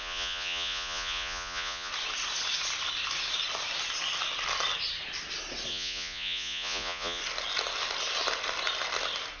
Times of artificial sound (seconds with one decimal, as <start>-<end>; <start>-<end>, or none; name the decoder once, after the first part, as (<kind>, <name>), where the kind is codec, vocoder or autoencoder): 0.0-1.9 (vocoder, Vocos); 5.7-7.2